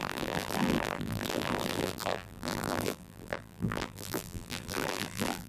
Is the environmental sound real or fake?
fake